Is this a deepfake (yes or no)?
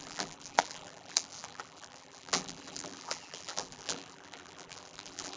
yes